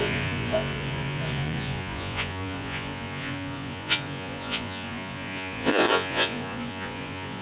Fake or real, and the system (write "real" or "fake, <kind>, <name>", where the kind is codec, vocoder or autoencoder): fake, vocoder, Vocos